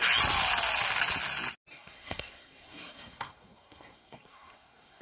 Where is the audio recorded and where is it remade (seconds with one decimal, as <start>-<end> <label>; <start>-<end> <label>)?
0.0-1.7 recorded; 1.7-5.0 remade